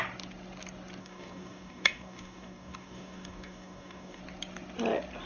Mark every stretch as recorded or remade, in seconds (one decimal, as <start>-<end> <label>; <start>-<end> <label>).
0.0-1.0 recorded; 1.0-4.2 remade; 4.2-5.3 recorded